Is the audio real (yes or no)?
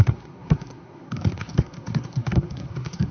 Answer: no